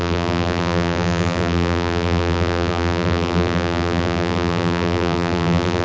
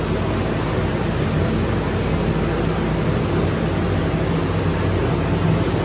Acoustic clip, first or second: second